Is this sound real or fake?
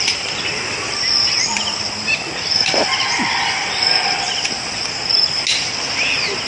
real